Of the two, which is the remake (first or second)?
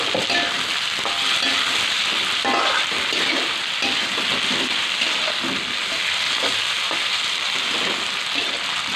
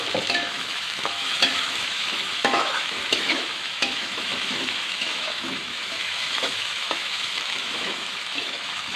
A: second